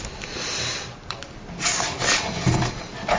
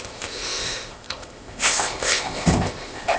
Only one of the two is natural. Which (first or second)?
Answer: first